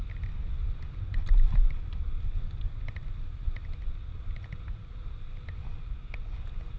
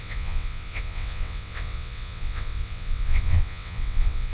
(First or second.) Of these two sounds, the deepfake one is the second